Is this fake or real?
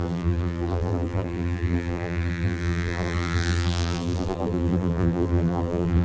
fake